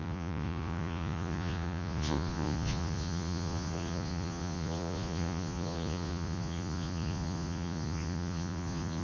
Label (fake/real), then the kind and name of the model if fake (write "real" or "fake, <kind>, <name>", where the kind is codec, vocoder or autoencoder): fake, vocoder, Vocos